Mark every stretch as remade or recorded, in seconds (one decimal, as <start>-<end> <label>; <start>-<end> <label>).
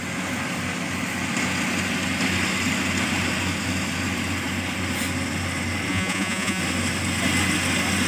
0.0-5.9 recorded; 5.9-6.6 remade; 6.6-8.1 recorded